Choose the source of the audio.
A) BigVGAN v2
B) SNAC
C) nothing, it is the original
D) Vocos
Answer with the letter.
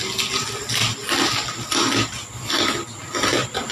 C